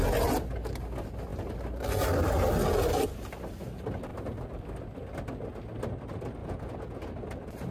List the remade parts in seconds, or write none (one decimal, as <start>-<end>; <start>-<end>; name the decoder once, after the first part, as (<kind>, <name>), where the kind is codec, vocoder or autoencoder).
6.4-7.0 (vocoder, Vocos)